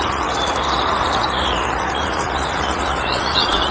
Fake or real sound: fake